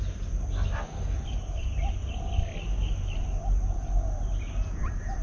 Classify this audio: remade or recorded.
recorded